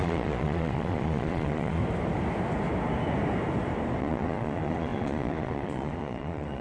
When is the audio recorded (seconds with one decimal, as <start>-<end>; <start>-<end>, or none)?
1.8-4.0